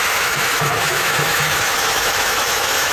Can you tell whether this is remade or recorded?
remade